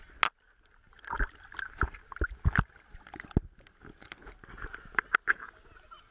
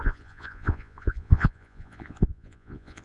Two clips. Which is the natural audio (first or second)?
first